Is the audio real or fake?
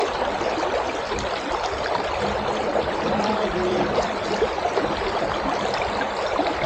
fake